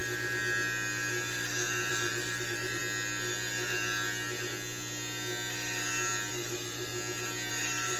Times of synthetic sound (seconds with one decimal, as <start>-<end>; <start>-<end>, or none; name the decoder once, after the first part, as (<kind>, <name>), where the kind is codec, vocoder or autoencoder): 1.9-2.8 (vocoder, BigVGAN v2); 6.3-6.9; 7.5-8.0